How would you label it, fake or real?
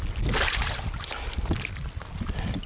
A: real